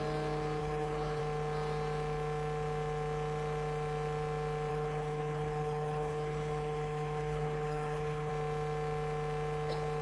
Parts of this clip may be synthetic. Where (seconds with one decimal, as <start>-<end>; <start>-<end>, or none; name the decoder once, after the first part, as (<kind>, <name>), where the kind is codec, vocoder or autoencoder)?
0.6-1.2 (codec, HILCodec); 4.7-8.3